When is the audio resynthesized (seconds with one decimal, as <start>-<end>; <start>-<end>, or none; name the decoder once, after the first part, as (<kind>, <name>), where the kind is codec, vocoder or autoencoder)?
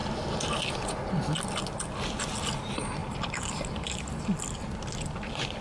3.0-4.1 (vocoder, BigVGAN v2)